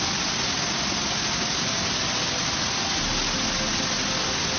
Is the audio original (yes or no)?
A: yes